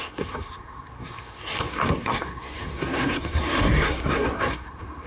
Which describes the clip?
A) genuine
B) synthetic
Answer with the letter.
B